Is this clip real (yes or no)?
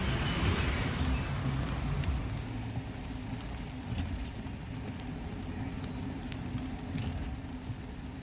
yes